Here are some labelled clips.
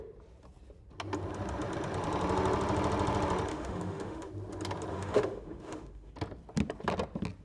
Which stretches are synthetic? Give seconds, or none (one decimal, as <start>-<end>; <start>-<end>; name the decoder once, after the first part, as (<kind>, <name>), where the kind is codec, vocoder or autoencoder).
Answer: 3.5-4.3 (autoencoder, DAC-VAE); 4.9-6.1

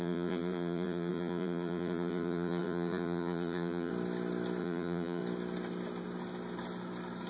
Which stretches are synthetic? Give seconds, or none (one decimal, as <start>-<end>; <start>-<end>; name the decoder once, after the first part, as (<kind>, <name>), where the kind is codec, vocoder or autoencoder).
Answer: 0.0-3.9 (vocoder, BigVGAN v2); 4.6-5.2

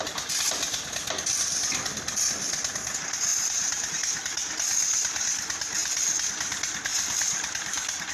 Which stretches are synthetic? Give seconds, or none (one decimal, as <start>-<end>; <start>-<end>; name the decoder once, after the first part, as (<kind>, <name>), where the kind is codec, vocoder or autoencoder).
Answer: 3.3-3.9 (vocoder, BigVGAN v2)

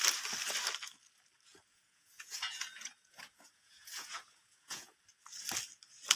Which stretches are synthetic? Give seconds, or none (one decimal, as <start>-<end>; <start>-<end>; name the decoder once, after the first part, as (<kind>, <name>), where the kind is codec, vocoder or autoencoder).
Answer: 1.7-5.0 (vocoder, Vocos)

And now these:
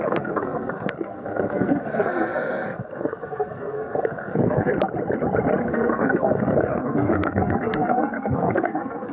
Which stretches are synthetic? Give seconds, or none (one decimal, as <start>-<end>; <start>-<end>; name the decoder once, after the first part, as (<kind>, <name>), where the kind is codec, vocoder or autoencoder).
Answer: 0.0-4.7 (codec, SNAC); 5.6-9.1